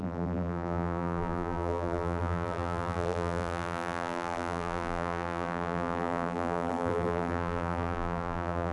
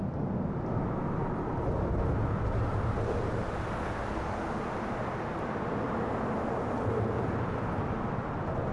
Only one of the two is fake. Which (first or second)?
first